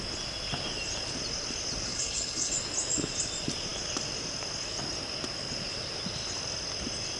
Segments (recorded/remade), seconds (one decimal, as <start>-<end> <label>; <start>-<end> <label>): 0.0-1.9 recorded; 1.9-2.5 remade; 2.5-7.2 recorded